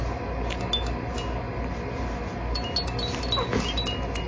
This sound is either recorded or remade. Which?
recorded